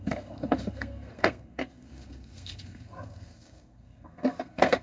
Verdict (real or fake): fake